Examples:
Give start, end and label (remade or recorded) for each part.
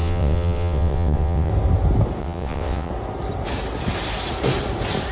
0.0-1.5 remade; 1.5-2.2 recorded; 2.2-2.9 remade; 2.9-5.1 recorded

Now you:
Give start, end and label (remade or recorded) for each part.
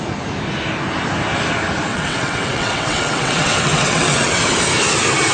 0.0-1.9 recorded; 1.9-4.4 remade; 4.4-5.3 recorded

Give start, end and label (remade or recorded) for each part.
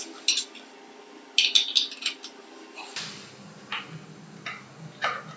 0.0-5.4 recorded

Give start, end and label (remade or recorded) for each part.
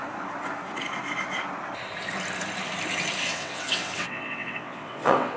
0.0-3.2 recorded; 3.2-5.4 remade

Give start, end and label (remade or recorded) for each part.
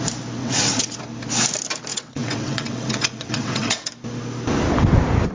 0.0-0.4 recorded; 0.4-1.0 remade; 1.0-1.9 recorded; 1.9-3.9 remade; 3.9-5.3 recorded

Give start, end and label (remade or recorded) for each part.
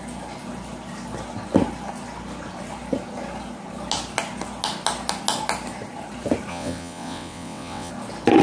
0.0-6.5 recorded; 6.5-7.9 remade; 7.9-8.4 recorded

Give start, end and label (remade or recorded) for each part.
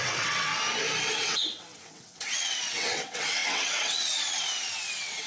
0.0-0.5 remade; 0.5-1.1 recorded; 1.1-5.3 remade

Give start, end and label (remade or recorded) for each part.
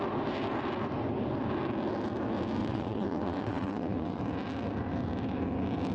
0.0-2.6 recorded; 2.6-4.2 remade; 4.2-5.9 recorded